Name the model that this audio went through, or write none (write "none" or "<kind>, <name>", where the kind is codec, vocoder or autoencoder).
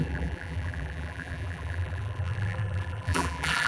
vocoder, BigVGAN v2